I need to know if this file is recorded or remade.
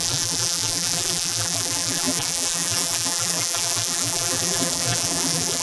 remade